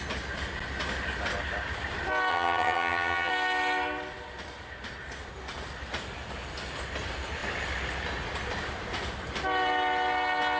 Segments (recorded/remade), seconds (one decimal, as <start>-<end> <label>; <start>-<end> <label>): 0.0-2.3 recorded; 2.3-3.3 remade; 3.3-10.6 recorded